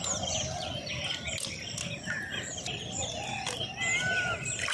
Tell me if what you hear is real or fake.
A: real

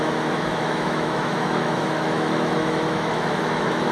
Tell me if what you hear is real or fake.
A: fake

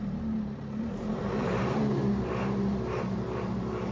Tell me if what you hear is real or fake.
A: fake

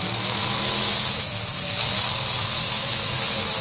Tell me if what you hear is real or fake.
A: fake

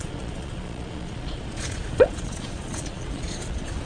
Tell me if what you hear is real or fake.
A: fake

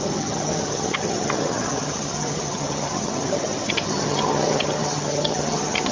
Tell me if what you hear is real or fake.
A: fake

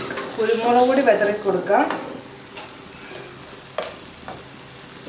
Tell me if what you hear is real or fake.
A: real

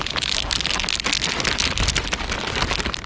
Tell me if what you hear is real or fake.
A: real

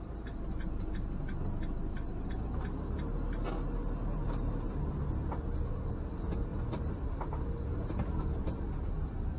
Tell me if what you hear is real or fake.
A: real